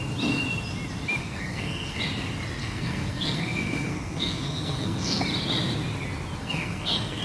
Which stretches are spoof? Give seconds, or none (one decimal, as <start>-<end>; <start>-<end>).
1.2-2.0; 2.6-5.2; 6.4-7.2